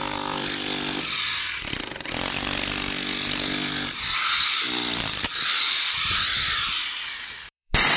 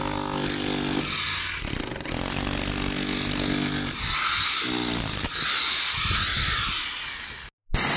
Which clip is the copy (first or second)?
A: first